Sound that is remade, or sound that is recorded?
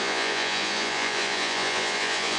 remade